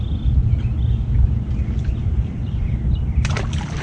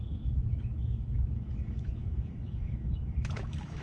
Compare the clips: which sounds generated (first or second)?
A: second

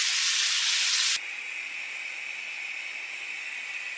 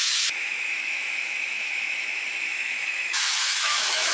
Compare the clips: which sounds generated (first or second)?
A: second